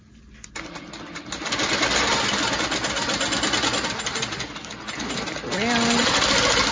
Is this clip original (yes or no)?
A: yes